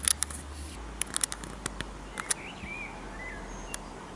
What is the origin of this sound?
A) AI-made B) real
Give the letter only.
B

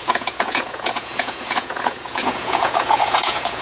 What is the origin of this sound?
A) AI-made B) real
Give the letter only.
A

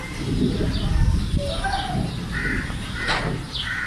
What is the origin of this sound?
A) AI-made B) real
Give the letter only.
A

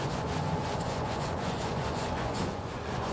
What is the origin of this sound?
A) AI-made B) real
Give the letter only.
A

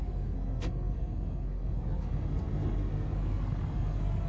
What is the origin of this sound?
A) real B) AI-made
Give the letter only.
B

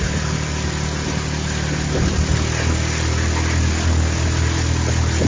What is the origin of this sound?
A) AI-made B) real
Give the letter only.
B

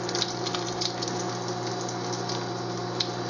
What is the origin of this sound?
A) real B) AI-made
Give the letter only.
A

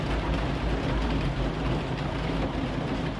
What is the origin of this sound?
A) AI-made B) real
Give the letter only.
B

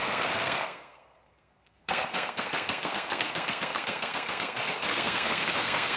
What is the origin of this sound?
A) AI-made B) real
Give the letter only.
A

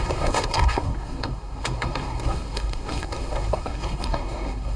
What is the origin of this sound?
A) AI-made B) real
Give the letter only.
A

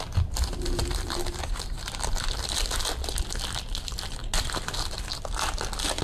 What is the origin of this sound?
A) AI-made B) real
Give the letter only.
B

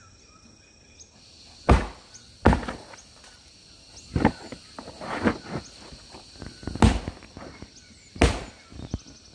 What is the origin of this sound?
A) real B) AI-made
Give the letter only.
A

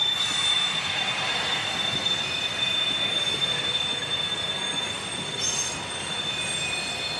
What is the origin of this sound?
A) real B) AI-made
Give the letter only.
B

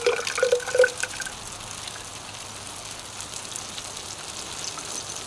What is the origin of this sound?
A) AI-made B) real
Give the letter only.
B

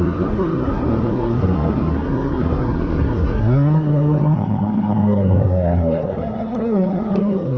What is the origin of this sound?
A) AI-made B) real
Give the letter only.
A